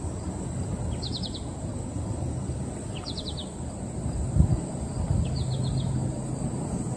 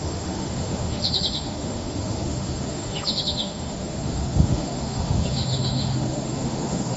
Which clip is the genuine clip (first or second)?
first